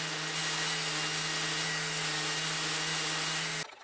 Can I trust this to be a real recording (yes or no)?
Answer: yes